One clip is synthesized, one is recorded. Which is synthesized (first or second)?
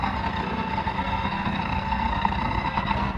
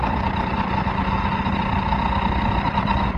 first